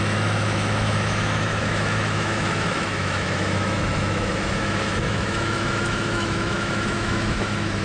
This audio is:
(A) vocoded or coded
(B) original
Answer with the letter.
A